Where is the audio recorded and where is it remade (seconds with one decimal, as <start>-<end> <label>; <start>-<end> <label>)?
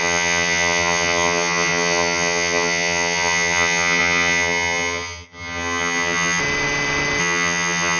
0.0-6.4 remade; 6.4-7.2 recorded; 7.2-8.0 remade